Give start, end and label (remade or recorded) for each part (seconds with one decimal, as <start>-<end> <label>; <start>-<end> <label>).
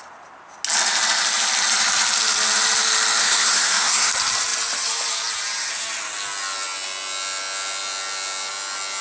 0.0-3.2 recorded; 3.2-4.1 remade; 4.1-9.0 recorded